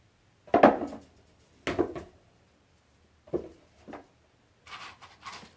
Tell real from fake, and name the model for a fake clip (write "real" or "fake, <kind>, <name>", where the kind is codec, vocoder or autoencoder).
real